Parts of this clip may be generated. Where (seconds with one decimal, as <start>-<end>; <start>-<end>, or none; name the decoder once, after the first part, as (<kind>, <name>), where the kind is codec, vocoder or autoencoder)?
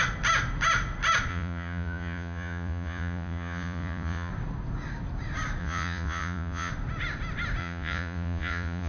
1.3-4.3 (vocoder, Vocos); 5.6-6.7; 7.6-8.9